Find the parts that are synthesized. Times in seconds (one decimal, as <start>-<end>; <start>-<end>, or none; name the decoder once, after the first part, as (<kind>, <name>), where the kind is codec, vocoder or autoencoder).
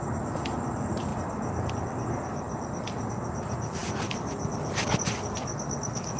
none